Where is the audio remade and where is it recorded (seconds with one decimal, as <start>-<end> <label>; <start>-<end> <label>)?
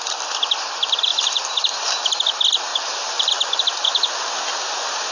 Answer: 0.0-1.1 recorded; 1.1-1.7 remade; 1.7-2.7 recorded; 2.7-3.7 remade; 3.7-5.1 recorded